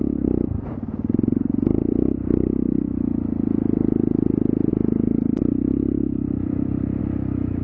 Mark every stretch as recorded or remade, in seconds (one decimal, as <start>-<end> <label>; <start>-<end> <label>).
0.0-4.7 recorded; 4.7-7.0 remade; 7.0-7.6 recorded